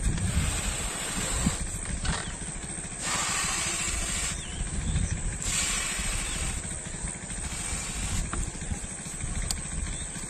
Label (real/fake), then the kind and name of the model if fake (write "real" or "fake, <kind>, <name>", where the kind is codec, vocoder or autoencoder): real